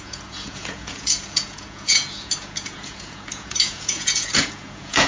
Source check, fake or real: fake